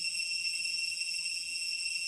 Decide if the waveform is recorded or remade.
remade